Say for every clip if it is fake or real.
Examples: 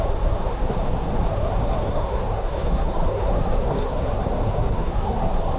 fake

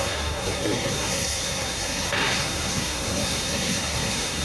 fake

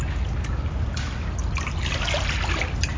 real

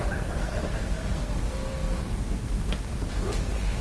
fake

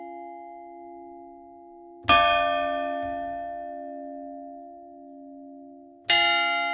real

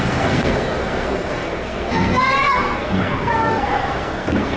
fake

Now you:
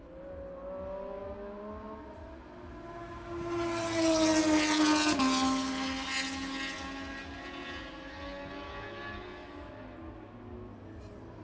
real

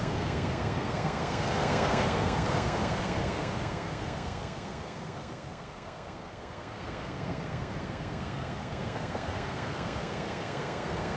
fake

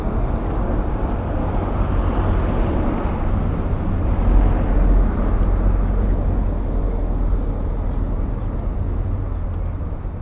real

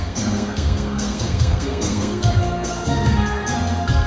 fake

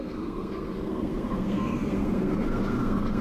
fake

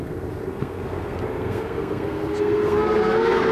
fake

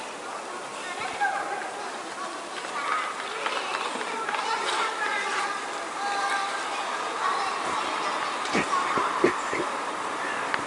real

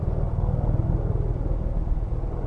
real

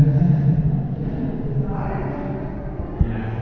real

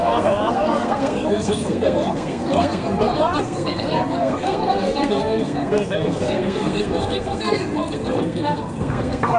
fake